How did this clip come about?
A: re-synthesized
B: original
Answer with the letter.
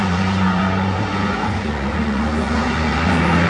A